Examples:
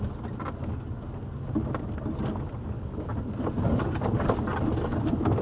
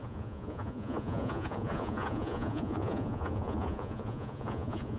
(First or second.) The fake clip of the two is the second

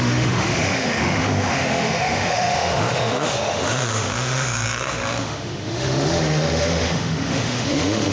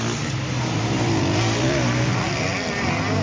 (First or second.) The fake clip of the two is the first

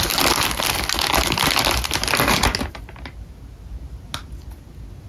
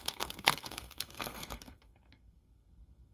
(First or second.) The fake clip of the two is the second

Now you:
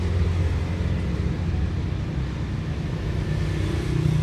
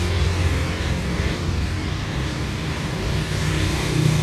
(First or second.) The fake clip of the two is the second